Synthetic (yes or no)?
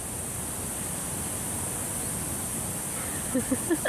no